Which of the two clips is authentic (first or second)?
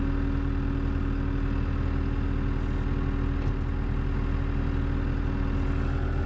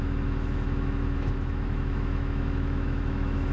first